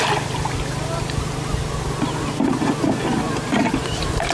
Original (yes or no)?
yes